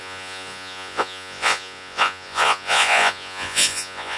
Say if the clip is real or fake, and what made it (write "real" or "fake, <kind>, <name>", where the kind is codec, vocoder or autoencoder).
fake, vocoder, Vocos